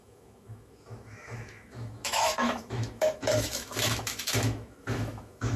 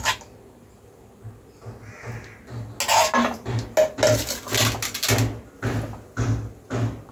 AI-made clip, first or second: first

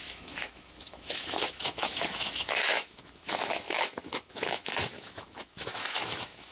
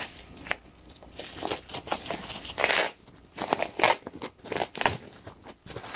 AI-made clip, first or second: first